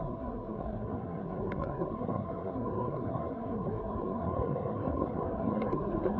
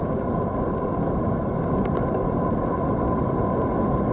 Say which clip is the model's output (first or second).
first